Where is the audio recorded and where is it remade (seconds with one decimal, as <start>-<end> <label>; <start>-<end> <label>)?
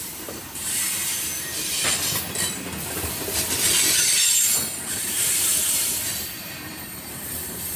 0.0-0.8 remade; 0.8-4.9 recorded; 4.9-7.8 remade